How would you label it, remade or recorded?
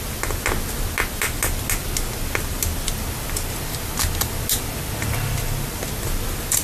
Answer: recorded